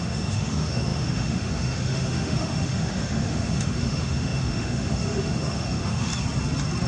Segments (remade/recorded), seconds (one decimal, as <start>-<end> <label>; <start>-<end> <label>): 0.0-6.1 remade; 6.1-6.9 recorded